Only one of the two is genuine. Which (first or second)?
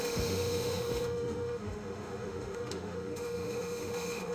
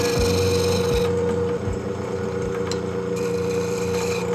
second